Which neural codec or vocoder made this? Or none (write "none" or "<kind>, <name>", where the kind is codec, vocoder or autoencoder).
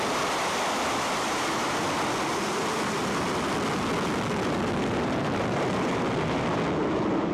vocoder, BigVGAN v2